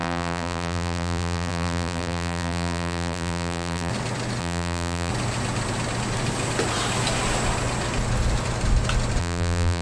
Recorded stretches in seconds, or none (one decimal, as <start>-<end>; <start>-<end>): 3.9-4.4; 5.1-9.2